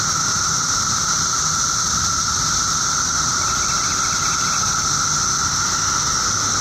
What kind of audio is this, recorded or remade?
recorded